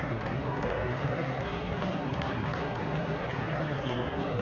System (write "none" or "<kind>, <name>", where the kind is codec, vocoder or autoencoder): codec, SNAC